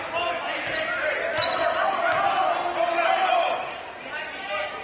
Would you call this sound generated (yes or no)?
no